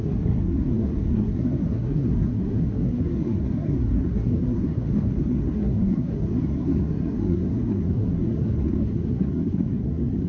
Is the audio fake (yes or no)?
yes